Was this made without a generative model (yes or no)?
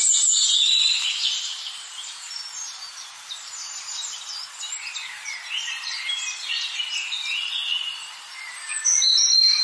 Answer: no